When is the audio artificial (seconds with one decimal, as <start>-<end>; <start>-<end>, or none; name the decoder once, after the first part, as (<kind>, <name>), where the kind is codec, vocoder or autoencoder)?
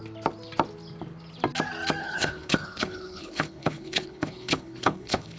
2.0-5.4 (codec, HILCodec)